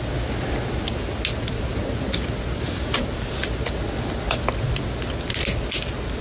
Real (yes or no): yes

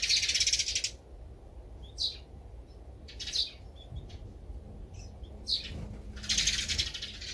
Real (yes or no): yes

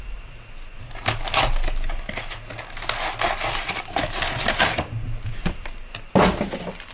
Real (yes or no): yes